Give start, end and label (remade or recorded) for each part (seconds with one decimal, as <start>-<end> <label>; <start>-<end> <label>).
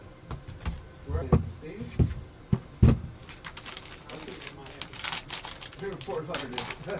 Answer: 0.0-7.0 recorded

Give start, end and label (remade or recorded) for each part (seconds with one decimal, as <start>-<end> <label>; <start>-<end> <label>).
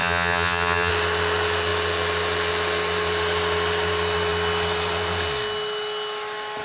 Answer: 0.0-0.9 remade; 0.9-6.6 recorded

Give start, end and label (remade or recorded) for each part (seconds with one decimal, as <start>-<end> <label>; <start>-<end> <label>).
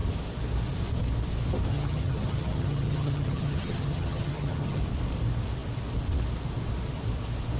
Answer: 0.0-1.7 recorded; 1.7-4.8 remade; 4.8-7.6 recorded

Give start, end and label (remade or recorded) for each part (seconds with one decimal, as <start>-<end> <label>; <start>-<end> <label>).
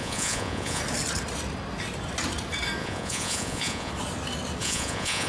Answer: 0.0-0.8 remade; 0.8-2.8 recorded; 2.8-3.9 remade; 3.9-4.6 recorded; 4.6-5.3 remade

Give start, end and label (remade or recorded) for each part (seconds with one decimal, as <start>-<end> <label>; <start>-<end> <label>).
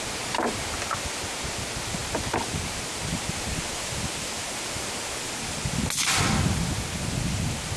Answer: 0.0-7.8 recorded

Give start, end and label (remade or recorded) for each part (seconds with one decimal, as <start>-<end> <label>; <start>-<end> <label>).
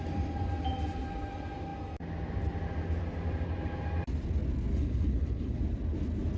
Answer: 0.0-4.7 recorded; 4.7-5.6 remade; 5.6-6.4 recorded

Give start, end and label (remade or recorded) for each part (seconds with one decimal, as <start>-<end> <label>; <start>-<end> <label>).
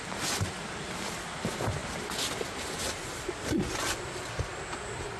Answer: 0.0-5.2 recorded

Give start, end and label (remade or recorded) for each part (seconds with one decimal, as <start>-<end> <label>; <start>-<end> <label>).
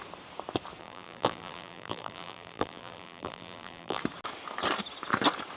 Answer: 0.0-0.8 recorded; 0.8-4.0 remade; 4.0-5.6 recorded